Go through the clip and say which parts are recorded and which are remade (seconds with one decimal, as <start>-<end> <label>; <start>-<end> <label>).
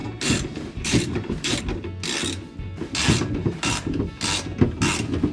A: 0.0-1.6 remade; 1.6-3.4 recorded; 3.4-4.0 remade; 4.0-5.3 recorded